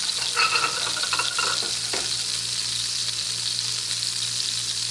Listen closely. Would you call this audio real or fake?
real